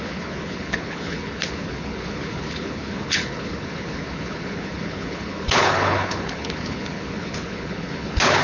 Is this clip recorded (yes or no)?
no